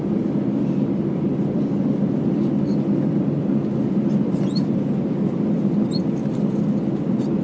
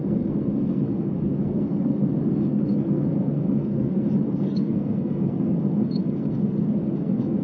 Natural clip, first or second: first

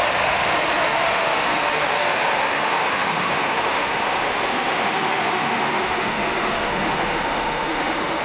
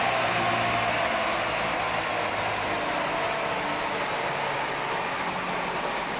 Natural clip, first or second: second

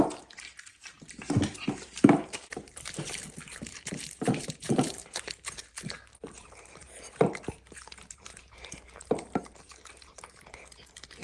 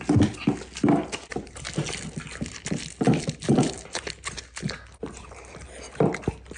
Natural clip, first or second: second